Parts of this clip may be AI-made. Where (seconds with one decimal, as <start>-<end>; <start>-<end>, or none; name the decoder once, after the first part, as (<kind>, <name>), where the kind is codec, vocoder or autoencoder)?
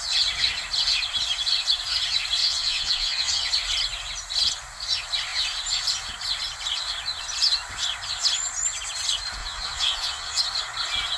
2.4-3.5 (vocoder, Vocos); 9.4-10.4